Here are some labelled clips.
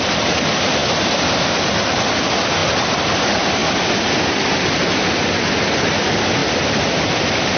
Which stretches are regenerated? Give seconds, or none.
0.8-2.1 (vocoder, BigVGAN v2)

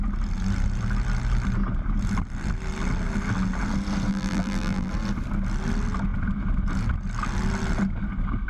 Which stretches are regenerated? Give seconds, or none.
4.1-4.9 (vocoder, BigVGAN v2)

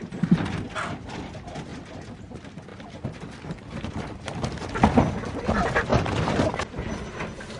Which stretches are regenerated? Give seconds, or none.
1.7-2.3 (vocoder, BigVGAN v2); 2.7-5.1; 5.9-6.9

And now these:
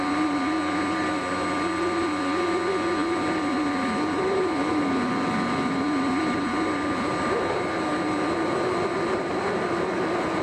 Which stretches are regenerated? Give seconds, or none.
none

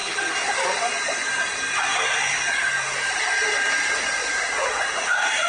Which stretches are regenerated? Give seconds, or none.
1.9-3.2 (vocoder, BigVGAN v2)

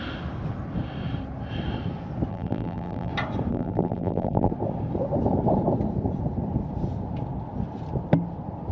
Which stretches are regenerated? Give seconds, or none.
2.3-3.1 (vocoder, BigVGAN v2); 3.5-4.5

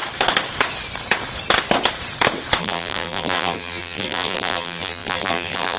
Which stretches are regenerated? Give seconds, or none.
2.6-5.8 (vocoder, BigVGAN v2)